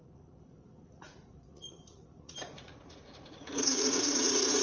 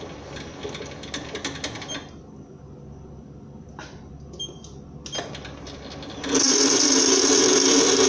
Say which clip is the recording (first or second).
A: second